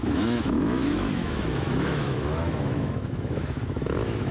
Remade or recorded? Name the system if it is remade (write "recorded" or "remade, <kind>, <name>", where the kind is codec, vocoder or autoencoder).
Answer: remade, autoencoder, DAC-VAE